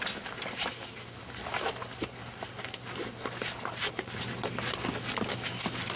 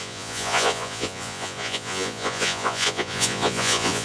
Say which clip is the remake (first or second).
second